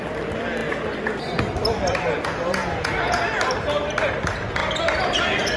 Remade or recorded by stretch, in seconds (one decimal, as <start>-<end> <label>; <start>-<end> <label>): 0.0-2.6 recorded; 2.6-3.2 remade; 3.2-5.6 recorded